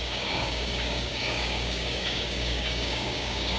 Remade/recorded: remade